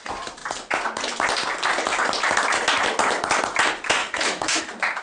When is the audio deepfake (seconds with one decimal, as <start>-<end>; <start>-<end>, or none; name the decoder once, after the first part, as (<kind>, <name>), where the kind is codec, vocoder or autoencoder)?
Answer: 4.0-4.6 (autoencoder, DAC-VAE)